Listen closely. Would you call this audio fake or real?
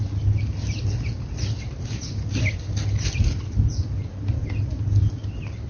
real